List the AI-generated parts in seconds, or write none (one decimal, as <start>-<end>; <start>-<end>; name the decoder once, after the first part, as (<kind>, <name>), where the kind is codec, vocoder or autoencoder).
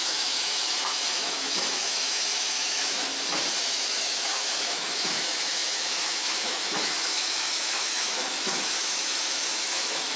0.0-3.1 (autoencoder, DAC-VAE); 3.6-10.2